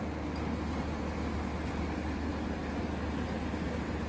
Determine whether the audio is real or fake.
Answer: real